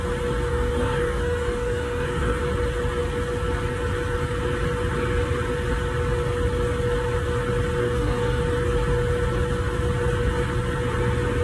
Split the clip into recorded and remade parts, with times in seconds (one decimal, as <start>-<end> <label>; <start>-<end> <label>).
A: 0.0-0.5 recorded; 0.5-2.4 remade; 2.4-7.8 recorded; 7.8-8.4 remade; 8.4-11.4 recorded